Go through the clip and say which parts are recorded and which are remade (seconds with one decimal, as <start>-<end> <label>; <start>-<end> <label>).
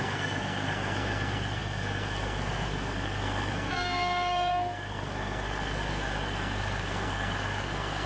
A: 0.0-8.1 remade